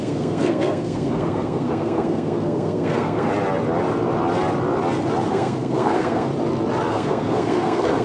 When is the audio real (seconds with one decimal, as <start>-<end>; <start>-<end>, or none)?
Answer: 3.3-5.3; 6.3-6.9

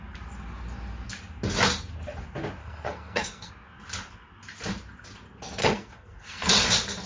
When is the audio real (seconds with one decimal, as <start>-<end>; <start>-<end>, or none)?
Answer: 0.0-2.6; 3.5-5.6; 6.5-7.1